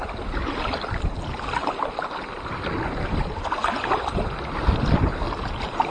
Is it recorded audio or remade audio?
recorded